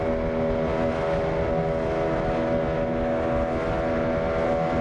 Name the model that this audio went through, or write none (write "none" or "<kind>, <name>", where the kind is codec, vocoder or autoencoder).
none